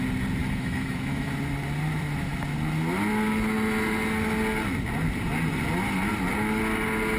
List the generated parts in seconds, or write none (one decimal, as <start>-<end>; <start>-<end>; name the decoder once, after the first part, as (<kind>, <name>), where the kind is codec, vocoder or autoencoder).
0.4-1.3 (autoencoder, DAC-VAE)